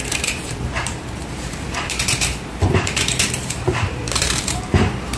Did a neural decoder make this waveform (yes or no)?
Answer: yes